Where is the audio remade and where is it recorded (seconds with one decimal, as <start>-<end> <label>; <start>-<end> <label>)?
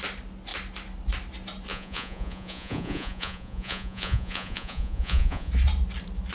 0.0-1.7 recorded; 1.7-5.5 remade; 5.5-6.3 recorded